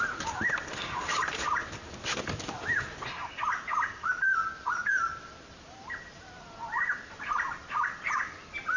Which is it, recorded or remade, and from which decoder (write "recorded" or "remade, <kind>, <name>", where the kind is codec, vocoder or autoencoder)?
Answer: recorded